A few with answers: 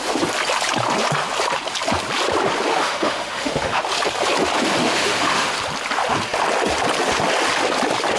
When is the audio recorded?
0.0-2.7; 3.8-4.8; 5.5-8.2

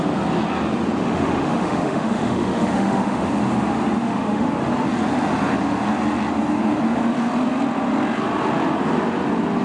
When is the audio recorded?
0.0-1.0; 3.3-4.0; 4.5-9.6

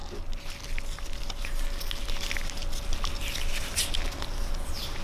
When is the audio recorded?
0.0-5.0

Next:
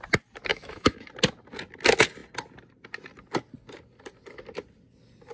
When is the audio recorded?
0.0-0.5; 1.1-5.3